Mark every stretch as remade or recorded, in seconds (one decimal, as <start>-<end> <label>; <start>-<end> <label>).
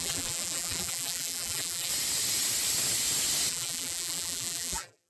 0.0-1.9 remade; 1.9-3.5 recorded; 3.5-5.1 remade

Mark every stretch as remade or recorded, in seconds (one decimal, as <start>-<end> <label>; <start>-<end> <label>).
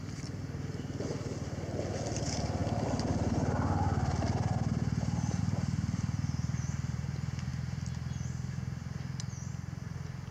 0.0-10.3 recorded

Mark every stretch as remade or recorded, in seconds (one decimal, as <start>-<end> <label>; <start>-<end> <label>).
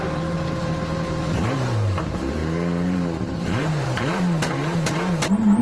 0.0-5.6 remade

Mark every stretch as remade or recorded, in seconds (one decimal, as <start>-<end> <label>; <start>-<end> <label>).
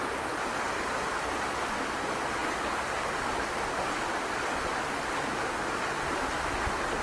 0.0-7.0 recorded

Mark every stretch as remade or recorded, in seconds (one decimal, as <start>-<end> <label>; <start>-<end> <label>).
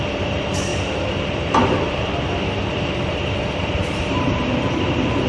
0.0-0.7 remade; 0.7-3.9 recorded; 3.9-5.3 remade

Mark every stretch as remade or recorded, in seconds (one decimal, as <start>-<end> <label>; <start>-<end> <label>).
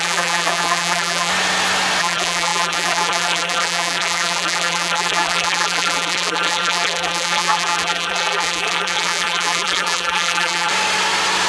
0.0-1.3 remade; 1.3-2.0 recorded; 2.0-10.7 remade; 10.7-11.5 recorded